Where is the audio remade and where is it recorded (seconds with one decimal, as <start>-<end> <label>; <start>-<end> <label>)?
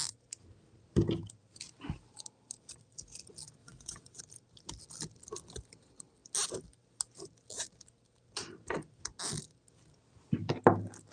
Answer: 0.0-3.6 recorded; 3.6-4.2 remade; 4.2-11.1 recorded